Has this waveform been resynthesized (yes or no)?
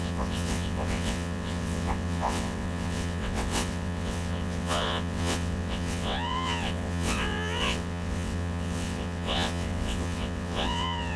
yes